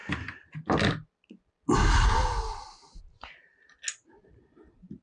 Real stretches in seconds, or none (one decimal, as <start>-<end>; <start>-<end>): 0.0-5.0